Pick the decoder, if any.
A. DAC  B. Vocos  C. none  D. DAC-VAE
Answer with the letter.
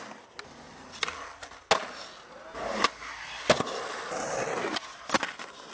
C